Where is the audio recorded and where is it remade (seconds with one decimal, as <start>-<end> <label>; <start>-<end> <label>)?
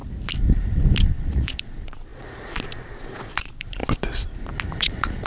0.0-1.0 recorded; 1.0-3.8 remade; 3.8-4.8 recorded; 4.8-5.3 remade